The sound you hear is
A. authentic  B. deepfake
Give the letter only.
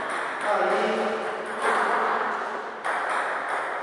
A